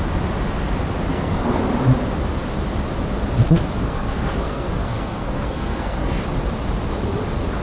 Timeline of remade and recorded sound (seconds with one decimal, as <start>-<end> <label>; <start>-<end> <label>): 0.0-1.1 recorded; 1.1-1.6 remade; 1.6-3.8 recorded; 3.8-6.2 remade; 6.2-7.6 recorded